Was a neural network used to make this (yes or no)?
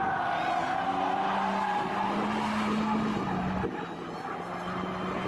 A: no